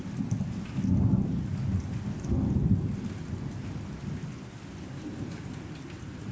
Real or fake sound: real